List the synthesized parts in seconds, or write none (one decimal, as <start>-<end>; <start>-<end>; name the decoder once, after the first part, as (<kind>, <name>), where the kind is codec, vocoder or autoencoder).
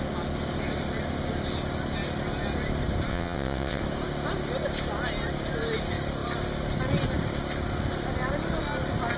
3.1-3.8 (vocoder, WaveNeXt)